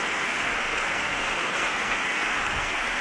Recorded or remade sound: remade